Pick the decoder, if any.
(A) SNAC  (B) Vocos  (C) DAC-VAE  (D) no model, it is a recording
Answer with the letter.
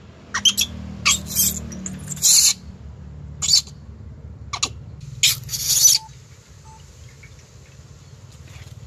D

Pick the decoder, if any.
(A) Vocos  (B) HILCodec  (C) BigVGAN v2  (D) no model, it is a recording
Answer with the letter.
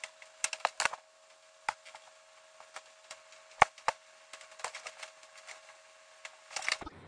D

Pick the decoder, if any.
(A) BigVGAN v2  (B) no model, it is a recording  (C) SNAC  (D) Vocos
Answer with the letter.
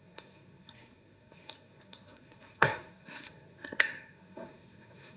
C